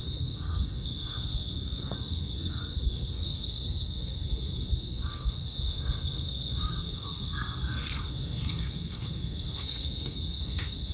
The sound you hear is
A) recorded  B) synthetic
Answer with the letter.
B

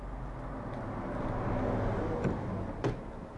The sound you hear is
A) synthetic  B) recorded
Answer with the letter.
B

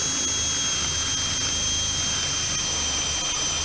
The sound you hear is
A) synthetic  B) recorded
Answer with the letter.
B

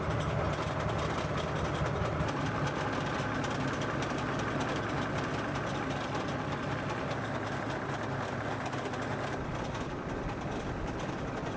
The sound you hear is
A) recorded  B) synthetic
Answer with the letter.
A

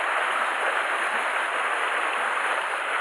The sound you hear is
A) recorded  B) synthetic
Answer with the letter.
A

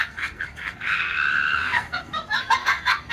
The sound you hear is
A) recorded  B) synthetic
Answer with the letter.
B